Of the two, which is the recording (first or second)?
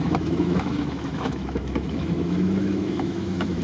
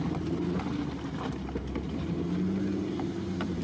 second